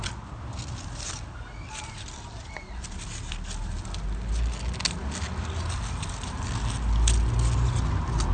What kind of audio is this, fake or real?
real